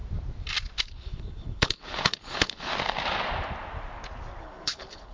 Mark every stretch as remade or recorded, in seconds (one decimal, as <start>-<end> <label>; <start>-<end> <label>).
0.0-0.8 recorded; 0.8-2.7 remade; 2.7-4.4 recorded; 4.4-5.1 remade